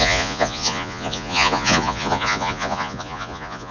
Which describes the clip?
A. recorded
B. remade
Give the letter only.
B